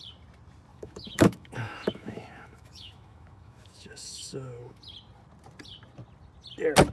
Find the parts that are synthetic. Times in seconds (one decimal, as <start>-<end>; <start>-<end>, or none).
0.7-4.8